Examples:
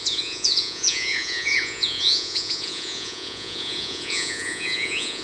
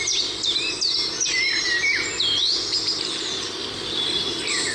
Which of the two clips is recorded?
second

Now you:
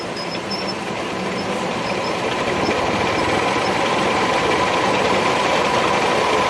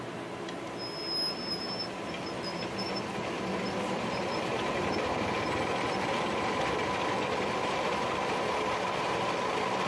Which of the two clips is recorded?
second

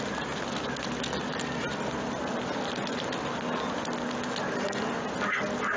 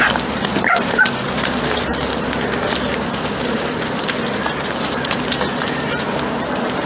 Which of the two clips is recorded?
first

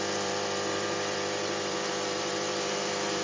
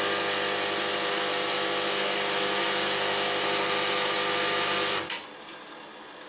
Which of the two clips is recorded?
second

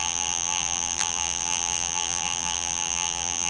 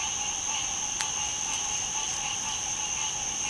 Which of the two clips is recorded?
second